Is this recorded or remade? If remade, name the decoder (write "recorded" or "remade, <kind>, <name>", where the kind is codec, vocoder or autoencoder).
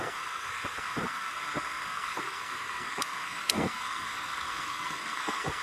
remade, codec, SNAC